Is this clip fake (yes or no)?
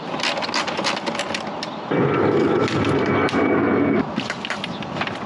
no